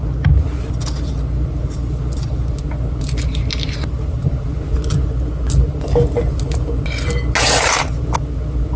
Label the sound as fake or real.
real